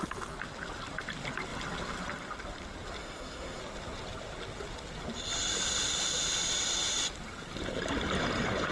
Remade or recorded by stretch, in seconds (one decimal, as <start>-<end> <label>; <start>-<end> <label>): 0.0-3.0 recorded; 3.0-3.6 remade; 3.6-8.7 recorded